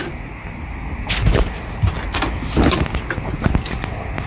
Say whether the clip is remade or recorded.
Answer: recorded